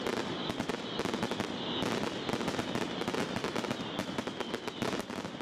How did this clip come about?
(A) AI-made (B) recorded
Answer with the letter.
B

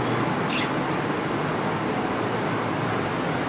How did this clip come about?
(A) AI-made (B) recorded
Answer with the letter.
B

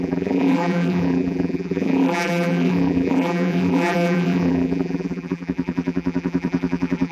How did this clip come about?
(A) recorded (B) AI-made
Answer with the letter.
B